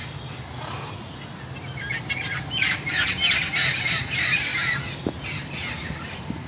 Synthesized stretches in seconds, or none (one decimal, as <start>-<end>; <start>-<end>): 3.9-6.5